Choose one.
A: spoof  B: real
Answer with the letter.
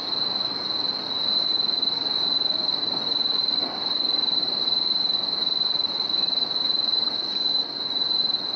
B